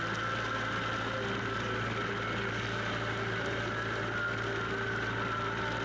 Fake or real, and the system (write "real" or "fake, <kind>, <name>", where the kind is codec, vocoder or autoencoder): real